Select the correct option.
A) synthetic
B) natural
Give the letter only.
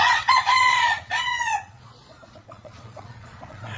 A